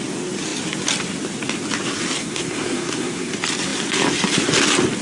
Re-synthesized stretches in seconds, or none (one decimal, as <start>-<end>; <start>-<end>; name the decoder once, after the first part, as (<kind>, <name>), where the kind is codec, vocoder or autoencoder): 2.2-3.3 (codec, SNAC)